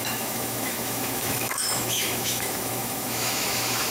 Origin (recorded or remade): remade